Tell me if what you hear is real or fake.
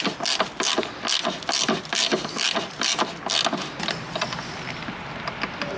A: real